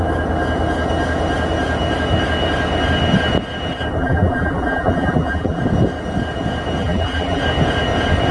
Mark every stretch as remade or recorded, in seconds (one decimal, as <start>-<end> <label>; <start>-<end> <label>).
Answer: 0.0-4.0 recorded; 4.0-5.6 remade; 5.6-6.8 recorded; 6.8-7.4 remade; 7.4-8.3 recorded

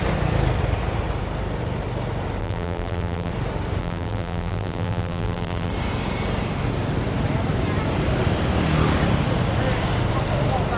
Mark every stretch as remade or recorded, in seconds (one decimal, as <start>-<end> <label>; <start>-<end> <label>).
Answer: 0.0-2.4 recorded; 2.4-3.3 remade; 3.3-3.8 recorded; 3.8-5.7 remade; 5.7-10.8 recorded